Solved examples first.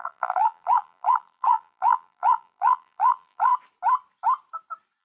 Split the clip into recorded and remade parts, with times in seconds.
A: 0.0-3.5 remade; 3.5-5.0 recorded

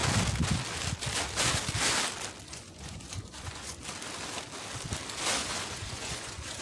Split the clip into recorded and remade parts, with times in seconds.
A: 0.0-2.5 recorded; 2.5-3.8 remade; 3.8-5.4 recorded; 5.4-6.6 remade